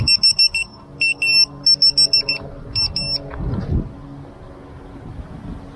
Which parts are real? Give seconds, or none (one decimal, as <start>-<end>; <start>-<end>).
0.0-5.8